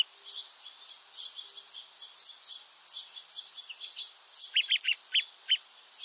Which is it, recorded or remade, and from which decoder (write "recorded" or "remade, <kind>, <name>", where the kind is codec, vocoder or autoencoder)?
recorded